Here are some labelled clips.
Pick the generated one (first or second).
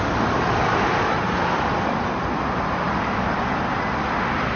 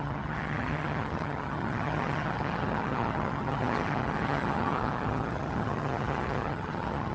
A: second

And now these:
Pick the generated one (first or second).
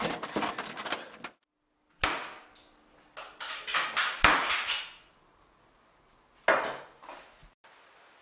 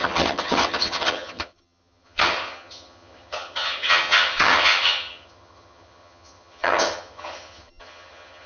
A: second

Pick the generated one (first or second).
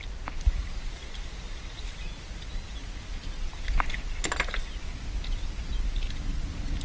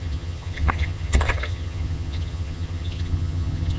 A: second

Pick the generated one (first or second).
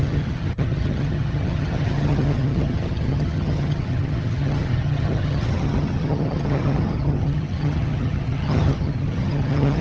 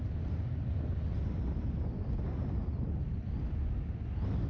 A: first